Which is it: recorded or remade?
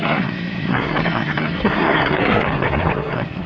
remade